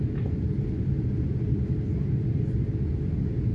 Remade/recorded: recorded